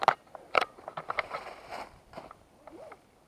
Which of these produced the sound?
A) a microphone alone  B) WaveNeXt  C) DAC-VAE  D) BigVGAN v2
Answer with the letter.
A